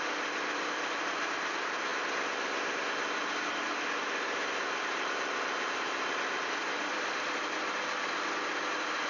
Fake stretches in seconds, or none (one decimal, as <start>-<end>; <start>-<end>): 0.0-1.9; 6.6-9.1